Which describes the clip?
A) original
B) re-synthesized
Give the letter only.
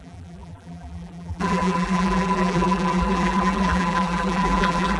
B